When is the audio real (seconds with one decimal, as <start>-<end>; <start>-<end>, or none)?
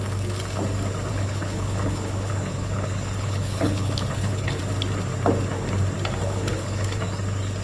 0.0-1.1; 4.6-6.2; 7.0-7.6